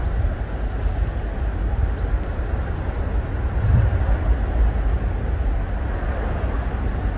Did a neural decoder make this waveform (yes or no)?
no